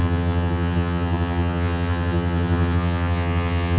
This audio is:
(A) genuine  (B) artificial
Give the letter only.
B